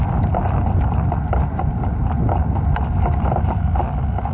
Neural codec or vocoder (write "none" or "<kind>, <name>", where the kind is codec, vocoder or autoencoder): none